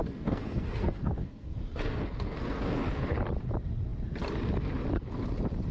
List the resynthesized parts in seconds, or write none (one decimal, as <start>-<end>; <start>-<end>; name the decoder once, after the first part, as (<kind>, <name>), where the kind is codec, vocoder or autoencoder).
0.0-3.2 (codec, SNAC)